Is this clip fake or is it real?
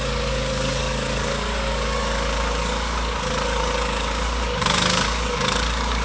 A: fake